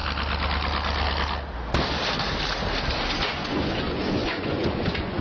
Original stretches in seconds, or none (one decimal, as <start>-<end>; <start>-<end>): 0.0-3.3